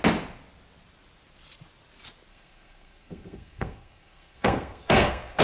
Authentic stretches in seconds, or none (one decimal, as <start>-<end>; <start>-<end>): 0.0-2.3